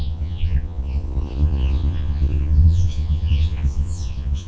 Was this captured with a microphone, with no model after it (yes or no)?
no